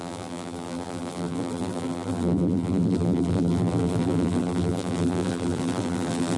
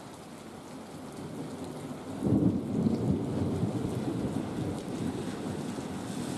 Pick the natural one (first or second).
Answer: second